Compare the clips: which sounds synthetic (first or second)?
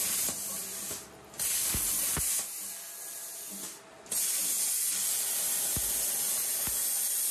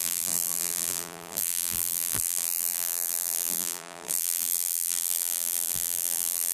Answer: second